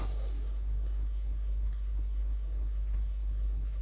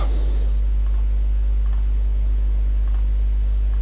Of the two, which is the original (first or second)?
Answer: second